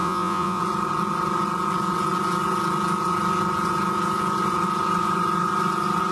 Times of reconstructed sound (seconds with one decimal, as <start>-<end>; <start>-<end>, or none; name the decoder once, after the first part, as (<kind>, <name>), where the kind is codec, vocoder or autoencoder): 0.0-0.6 (vocoder, Vocos)